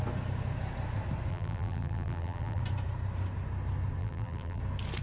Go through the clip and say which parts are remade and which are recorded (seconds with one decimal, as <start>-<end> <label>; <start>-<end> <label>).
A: 0.0-1.3 recorded; 1.3-2.6 remade; 2.6-4.0 recorded; 4.0-4.6 remade; 4.6-5.0 recorded